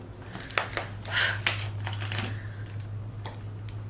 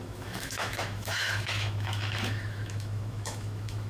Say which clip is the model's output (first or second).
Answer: second